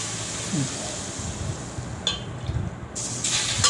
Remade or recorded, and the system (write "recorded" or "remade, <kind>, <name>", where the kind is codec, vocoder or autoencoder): recorded